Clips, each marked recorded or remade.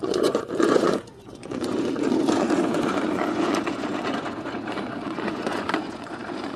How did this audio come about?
remade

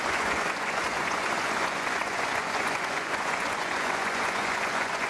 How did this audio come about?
remade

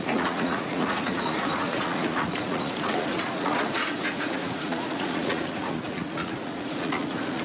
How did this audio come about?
remade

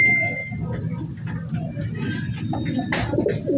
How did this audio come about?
recorded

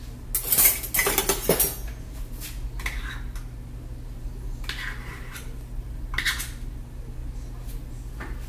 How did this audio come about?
recorded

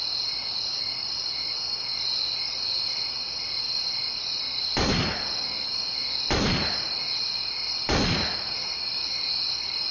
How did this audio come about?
recorded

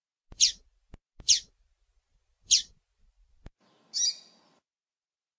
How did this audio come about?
recorded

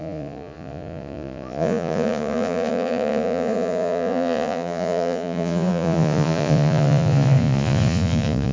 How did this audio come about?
remade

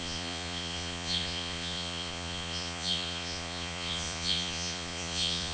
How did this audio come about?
remade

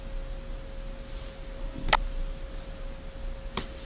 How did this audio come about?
recorded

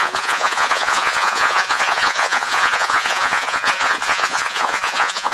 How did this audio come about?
remade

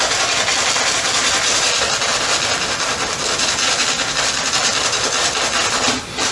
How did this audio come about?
recorded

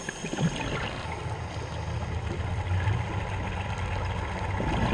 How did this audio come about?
recorded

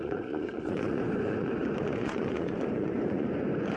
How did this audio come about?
remade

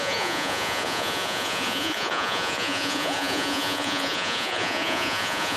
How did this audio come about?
remade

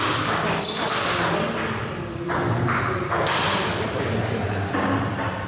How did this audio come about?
recorded